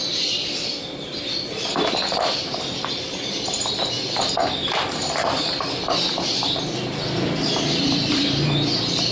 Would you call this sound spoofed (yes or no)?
yes